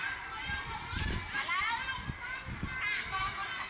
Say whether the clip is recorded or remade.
recorded